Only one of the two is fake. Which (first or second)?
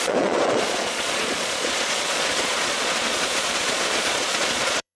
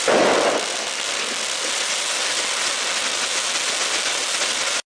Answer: first